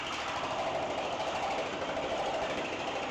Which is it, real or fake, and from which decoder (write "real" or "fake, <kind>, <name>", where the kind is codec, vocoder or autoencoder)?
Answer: real